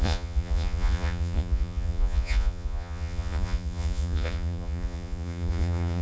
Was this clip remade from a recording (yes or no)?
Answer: yes